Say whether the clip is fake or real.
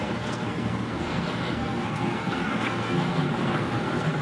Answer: fake